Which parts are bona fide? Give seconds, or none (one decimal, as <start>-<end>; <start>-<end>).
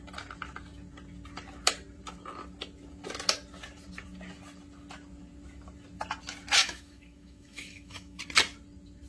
0.0-6.6; 8.2-9.1